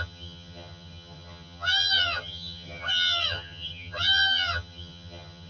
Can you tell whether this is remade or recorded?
remade